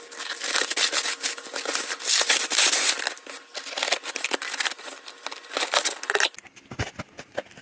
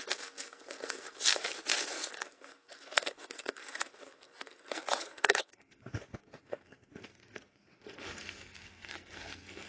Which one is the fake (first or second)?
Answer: second